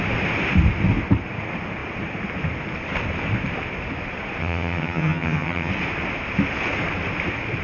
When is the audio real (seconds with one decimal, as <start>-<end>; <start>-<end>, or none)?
0.0-4.4; 5.7-7.6